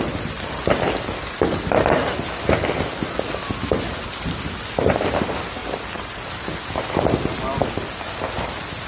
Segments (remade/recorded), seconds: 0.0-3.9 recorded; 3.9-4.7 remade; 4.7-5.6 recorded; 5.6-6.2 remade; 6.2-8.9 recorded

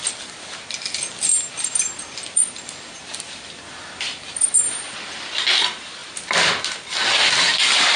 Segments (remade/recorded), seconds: 0.0-1.3 recorded; 1.3-4.8 remade; 4.8-8.0 recorded

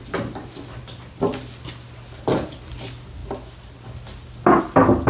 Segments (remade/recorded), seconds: 0.0-5.1 recorded

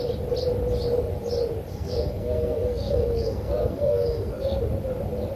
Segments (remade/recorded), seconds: 0.0-1.7 recorded; 1.7-4.6 remade; 4.6-5.4 recorded